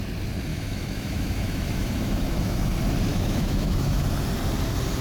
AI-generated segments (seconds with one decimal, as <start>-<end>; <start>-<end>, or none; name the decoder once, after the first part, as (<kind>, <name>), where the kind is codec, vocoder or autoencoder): 0.5-2.7 (autoencoder, DAC-VAE); 3.1-4.0